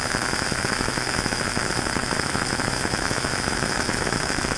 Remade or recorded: remade